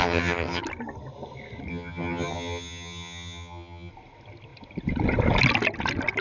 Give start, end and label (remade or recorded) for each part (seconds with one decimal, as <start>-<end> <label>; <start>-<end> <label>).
0.0-0.6 remade; 0.6-1.7 recorded; 1.7-3.9 remade; 3.9-6.2 recorded